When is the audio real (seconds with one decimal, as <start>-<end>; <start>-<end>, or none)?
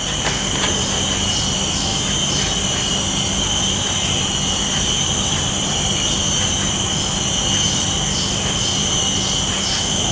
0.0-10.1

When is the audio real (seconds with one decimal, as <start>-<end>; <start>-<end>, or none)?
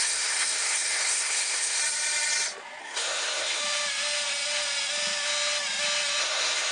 1.8-2.8; 3.6-6.2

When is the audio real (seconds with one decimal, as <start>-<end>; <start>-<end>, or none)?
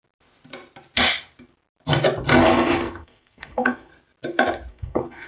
0.0-2.4; 3.9-4.7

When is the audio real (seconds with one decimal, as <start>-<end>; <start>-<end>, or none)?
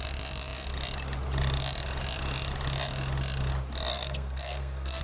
0.0-3.9